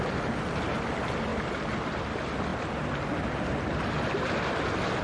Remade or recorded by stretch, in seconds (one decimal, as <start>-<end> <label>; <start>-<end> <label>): 0.0-5.0 recorded